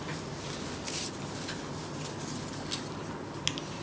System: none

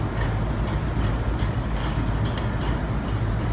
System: none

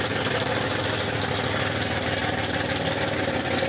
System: none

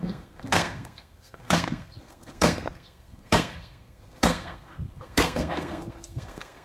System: codec, SNAC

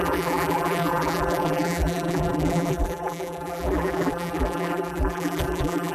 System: vocoder, BigVGAN v2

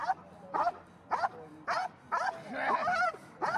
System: none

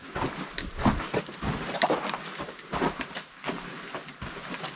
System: none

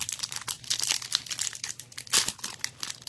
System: none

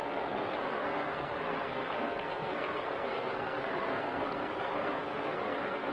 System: codec, SNAC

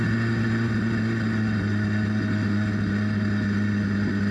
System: none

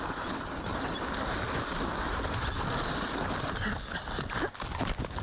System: none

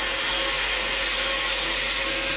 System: none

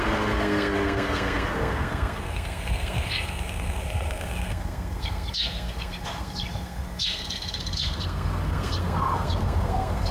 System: codec, SNAC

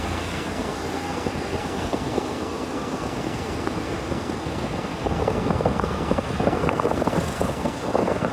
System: codec, SNAC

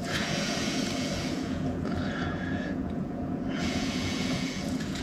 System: vocoder, Vocos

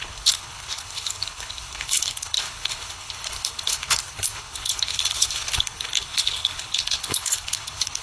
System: codec, HILCodec